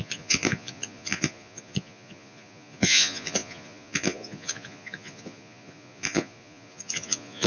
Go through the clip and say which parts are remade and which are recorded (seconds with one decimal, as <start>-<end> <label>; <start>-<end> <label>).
0.0-7.5 remade